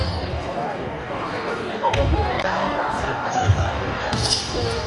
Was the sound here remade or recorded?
remade